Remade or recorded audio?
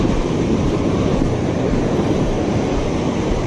remade